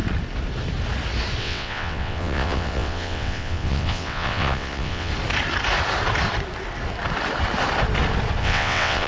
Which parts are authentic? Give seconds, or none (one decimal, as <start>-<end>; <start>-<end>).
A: 0.0-1.4; 5.1-8.4